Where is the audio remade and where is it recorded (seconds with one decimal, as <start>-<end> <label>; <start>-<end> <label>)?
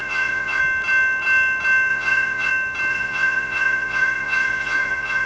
0.0-0.6 remade; 0.6-1.9 recorded; 1.9-2.5 remade; 2.5-2.9 recorded; 2.9-5.3 remade